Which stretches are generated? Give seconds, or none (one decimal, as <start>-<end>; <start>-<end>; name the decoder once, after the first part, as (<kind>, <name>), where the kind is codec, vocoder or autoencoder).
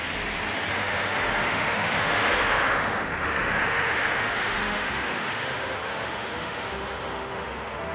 0.7-7.9 (autoencoder, DAC-VAE)